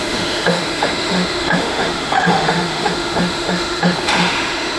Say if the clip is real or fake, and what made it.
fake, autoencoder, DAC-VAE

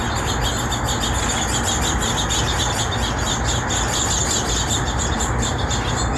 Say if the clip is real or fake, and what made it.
real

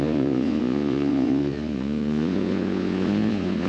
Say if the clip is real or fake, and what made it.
fake, vocoder, Vocos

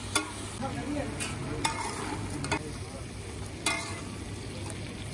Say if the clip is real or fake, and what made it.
real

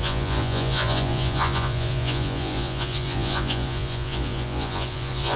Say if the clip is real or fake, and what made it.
fake, vocoder, Vocos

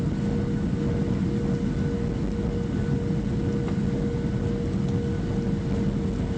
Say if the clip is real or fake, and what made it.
real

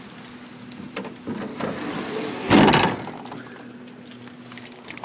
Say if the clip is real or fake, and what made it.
real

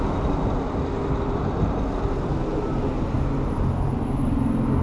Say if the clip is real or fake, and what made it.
real